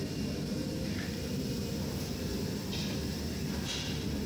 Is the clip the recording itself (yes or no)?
no